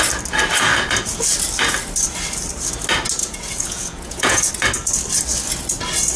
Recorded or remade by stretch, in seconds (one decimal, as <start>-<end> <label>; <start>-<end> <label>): 0.0-3.2 recorded; 3.2-4.5 remade; 4.5-6.2 recorded